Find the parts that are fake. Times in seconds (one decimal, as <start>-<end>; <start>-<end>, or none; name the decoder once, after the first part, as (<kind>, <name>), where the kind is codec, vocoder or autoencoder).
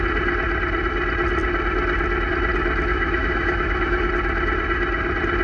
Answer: 2.9-4.1 (autoencoder, DAC-VAE)